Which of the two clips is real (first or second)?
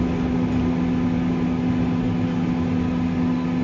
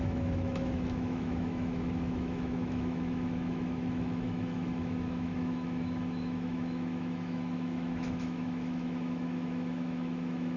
first